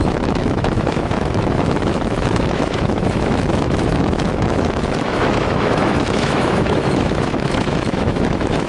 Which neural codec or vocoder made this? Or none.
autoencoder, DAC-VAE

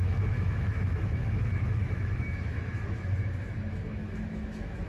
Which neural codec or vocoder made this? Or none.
autoencoder, DAC-VAE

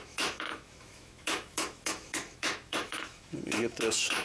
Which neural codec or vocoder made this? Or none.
autoencoder, DAC-VAE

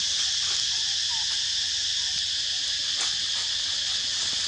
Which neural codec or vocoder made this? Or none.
none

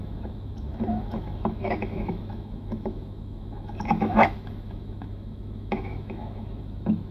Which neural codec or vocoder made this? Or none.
autoencoder, DAC-VAE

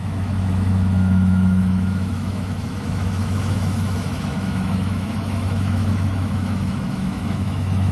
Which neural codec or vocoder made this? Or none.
autoencoder, DAC-VAE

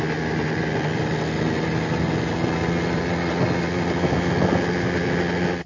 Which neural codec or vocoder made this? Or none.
none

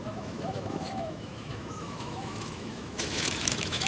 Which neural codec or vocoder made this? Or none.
autoencoder, DAC-VAE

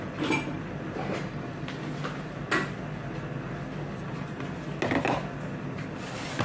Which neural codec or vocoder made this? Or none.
none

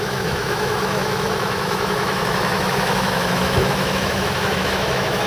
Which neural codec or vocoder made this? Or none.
autoencoder, DAC-VAE